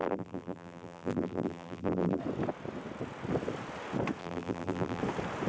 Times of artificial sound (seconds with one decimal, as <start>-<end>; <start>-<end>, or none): 0.0-2.2; 4.2-5.0